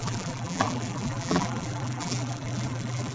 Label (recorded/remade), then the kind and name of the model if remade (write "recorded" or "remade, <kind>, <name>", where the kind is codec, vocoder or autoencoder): remade, vocoder, BigVGAN v2